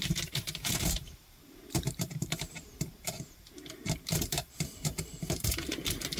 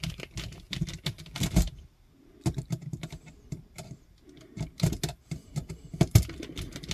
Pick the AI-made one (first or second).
first